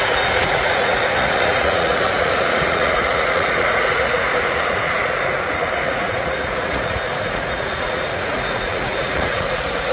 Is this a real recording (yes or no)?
no